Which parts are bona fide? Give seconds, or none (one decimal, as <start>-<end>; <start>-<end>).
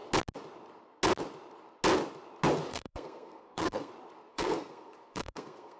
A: 0.0-2.7; 3.9-4.3